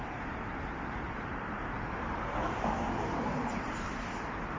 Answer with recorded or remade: remade